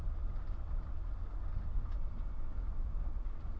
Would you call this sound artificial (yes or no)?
yes